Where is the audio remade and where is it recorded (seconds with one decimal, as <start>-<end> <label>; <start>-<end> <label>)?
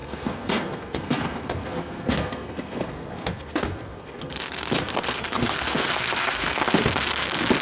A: 0.0-6.6 remade; 6.6-7.6 recorded